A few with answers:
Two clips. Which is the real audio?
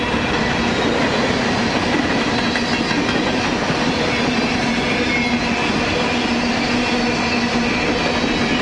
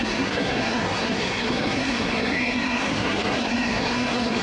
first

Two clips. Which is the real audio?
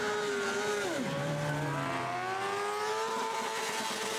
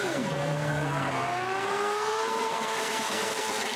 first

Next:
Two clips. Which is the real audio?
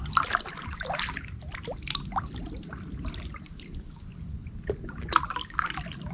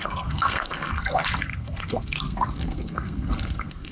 first